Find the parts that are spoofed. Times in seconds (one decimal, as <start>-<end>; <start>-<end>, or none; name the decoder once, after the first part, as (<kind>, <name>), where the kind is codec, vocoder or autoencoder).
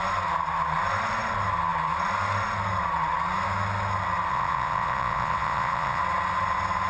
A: 4.3-6.0 (vocoder, Vocos)